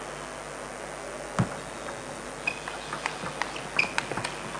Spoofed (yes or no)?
no